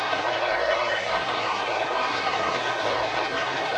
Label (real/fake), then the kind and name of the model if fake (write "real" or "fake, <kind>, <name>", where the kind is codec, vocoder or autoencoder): fake, codec, SNAC